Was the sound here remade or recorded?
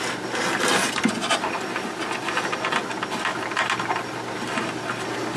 recorded